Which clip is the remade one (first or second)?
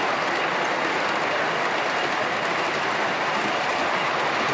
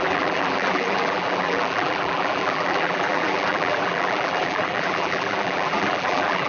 second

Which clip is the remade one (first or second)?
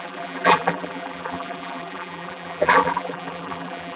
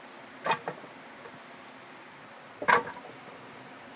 first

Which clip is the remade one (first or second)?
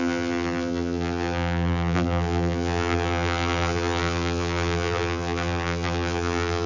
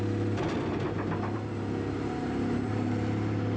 first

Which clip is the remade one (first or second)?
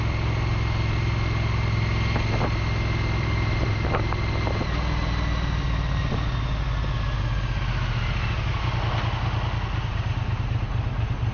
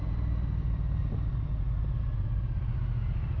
second